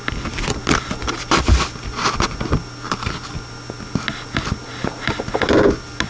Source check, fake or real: real